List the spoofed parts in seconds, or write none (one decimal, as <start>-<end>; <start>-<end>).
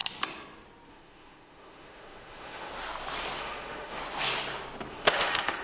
0.9-2.7; 3.4-4.0; 4.9-5.6